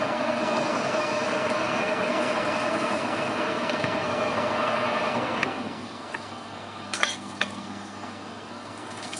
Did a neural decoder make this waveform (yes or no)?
yes